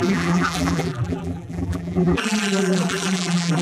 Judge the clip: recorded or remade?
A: remade